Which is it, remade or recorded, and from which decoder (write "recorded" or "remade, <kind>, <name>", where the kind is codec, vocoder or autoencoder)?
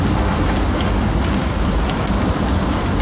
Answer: recorded